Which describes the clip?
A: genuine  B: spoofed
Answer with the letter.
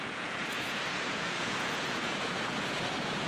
B